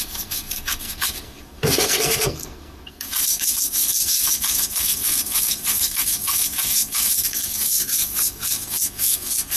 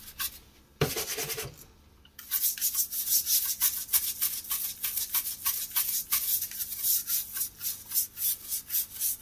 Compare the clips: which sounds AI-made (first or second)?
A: first